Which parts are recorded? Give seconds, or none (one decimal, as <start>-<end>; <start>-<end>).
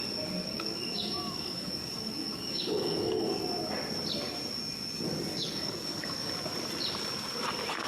0.0-0.4; 3.4-5.3; 6.3-7.9